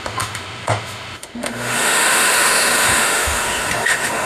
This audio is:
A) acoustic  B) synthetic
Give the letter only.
B